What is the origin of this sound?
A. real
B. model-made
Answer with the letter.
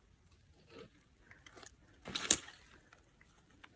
A